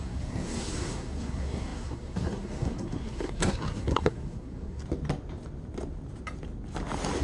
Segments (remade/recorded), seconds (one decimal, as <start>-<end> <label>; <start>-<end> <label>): 0.0-4.8 remade; 4.8-7.2 recorded